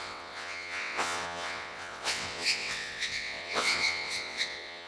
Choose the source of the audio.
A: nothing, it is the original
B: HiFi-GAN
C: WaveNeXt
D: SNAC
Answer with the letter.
C